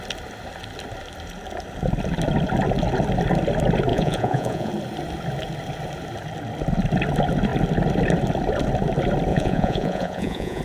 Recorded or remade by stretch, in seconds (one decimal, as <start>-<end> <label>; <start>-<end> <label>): 0.0-3.9 recorded; 3.9-4.7 remade; 4.7-9.3 recorded; 9.3-10.6 remade